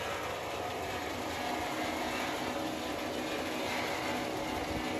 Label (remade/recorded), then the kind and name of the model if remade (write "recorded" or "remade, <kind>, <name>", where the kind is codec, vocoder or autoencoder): recorded